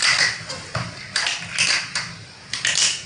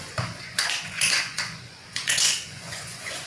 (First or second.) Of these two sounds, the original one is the first